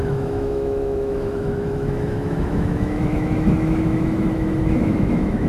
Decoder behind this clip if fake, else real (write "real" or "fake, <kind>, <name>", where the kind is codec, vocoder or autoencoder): fake, autoencoder, DAC-VAE